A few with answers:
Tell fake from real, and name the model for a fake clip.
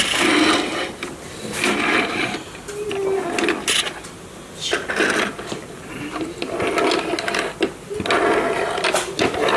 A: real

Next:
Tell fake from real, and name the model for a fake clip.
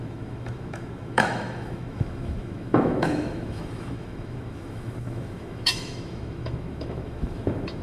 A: fake, autoencoder, DAC-VAE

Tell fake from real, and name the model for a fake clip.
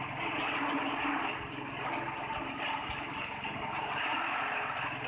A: real